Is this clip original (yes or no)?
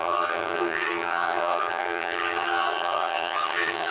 no